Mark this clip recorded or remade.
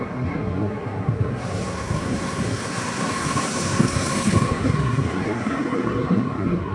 remade